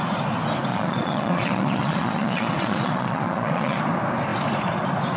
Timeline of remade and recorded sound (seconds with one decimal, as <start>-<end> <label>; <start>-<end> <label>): 0.0-0.7 recorded; 0.7-3.8 remade; 3.8-5.2 recorded